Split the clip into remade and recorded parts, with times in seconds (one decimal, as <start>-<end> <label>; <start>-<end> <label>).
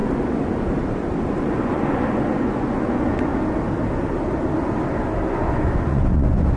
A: 0.0-1.4 recorded; 1.4-3.3 remade; 3.3-5.3 recorded; 5.3-6.6 remade